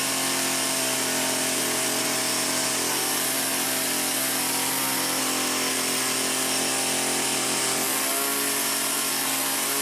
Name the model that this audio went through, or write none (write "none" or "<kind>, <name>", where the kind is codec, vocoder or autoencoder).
none